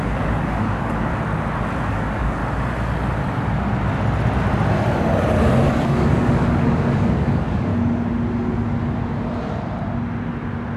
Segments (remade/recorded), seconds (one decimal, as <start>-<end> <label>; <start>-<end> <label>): 0.0-1.1 remade; 1.1-1.9 recorded; 1.9-2.4 remade; 2.4-5.8 recorded; 5.8-7.7 remade; 7.7-10.8 recorded